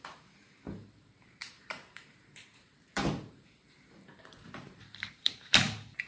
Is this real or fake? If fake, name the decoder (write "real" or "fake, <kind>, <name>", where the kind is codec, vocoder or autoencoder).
fake, vocoder, BigVGAN v2